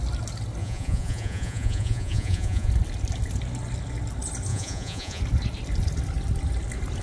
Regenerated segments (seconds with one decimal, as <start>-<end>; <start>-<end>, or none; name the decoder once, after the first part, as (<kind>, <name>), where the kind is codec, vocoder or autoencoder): 0.6-2.7 (vocoder, Vocos); 4.5-5.2